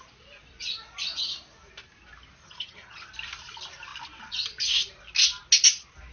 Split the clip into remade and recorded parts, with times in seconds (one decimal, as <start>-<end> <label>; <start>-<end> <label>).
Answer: 0.0-2.4 recorded; 2.4-3.1 remade; 3.1-6.1 recorded